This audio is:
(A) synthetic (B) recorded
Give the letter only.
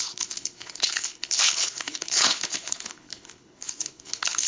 A